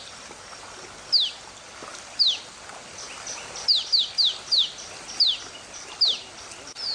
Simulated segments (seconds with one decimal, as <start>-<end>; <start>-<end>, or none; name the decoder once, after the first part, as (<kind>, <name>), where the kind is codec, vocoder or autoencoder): none